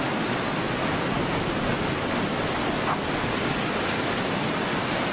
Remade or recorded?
recorded